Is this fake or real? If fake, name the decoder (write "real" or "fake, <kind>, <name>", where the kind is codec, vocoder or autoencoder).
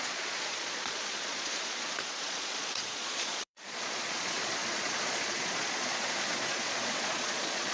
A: fake, vocoder, Vocos